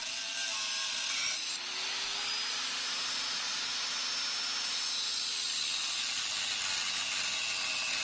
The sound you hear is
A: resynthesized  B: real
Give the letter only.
B